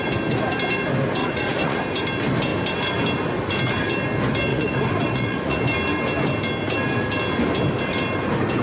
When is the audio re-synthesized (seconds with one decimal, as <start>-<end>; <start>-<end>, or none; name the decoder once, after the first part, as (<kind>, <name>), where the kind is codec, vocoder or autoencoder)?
1.2-1.8 (vocoder, Vocos); 4.5-5.6